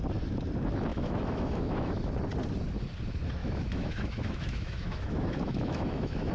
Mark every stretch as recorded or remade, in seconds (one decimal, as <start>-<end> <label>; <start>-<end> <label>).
0.0-0.9 recorded; 0.9-2.1 remade; 2.1-3.4 recorded; 3.4-6.3 remade